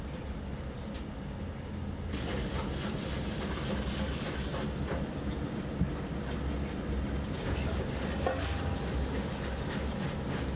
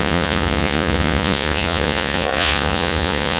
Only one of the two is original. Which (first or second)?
first